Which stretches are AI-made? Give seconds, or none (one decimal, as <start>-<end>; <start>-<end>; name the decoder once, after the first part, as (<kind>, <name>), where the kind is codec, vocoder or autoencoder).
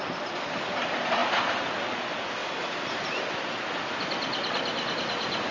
1.2-1.9 (vocoder, BigVGAN v2); 2.4-3.0